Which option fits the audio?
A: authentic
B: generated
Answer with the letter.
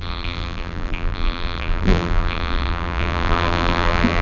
B